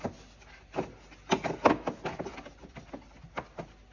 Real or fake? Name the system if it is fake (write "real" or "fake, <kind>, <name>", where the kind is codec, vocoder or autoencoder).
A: real